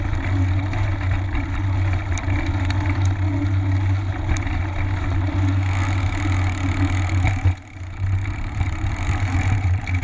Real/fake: real